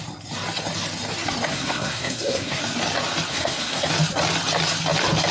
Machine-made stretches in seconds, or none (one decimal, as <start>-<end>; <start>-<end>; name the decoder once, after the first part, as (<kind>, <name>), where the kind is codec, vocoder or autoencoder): 1.5-2.6 (codec, SNAC); 3.3-3.9